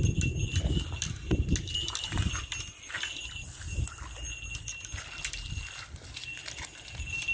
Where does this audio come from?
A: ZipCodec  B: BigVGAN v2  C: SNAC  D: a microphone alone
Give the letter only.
D